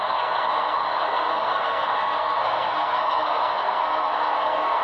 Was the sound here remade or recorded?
remade